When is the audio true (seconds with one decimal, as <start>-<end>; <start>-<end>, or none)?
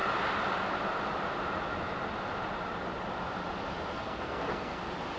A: 0.0-3.9; 4.8-5.2